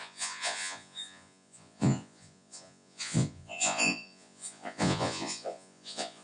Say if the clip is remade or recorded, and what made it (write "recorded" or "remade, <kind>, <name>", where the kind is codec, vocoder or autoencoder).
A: remade, vocoder, Vocos